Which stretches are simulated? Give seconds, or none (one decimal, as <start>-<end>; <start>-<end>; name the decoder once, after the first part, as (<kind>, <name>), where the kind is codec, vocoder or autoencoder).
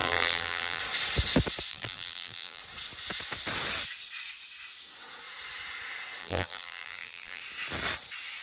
0.0-0.8 (vocoder, BigVGAN v2); 1.7-2.6; 6.2-7.4